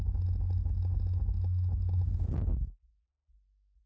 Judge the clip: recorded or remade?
recorded